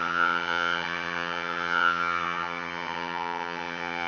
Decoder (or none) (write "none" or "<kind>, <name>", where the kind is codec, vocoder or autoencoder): vocoder, HiFi-GAN